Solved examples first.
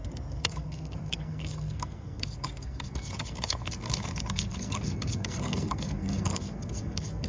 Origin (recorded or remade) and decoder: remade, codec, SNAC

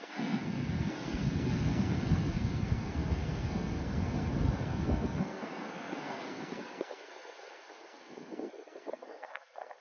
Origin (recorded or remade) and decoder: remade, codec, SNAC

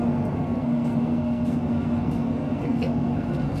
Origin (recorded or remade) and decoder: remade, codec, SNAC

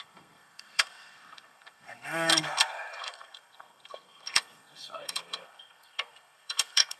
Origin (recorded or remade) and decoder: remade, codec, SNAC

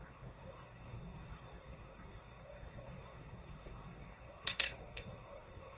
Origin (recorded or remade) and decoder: remade, codec, SNAC